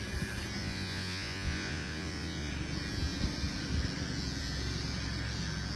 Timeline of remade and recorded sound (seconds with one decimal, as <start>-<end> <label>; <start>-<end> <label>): 0.0-0.6 recorded; 0.6-2.5 remade; 2.5-5.8 recorded